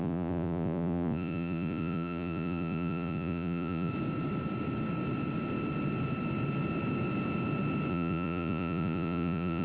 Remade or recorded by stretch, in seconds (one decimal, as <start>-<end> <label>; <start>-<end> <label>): 0.0-3.9 remade; 3.9-7.9 recorded; 7.9-9.6 remade

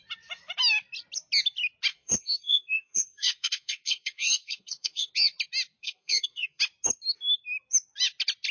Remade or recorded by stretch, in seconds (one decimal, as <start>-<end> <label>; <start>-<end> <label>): 0.0-1.9 recorded; 1.9-5.1 remade; 5.1-5.8 recorded; 5.8-6.6 remade; 6.6-8.5 recorded

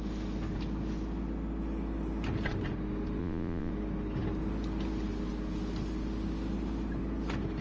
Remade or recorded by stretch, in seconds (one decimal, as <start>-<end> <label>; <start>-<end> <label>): 0.0-3.2 recorded; 3.2-3.7 remade; 3.7-7.6 recorded